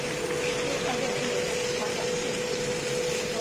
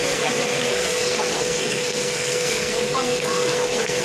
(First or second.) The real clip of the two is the first